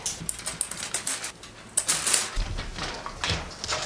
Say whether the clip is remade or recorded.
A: recorded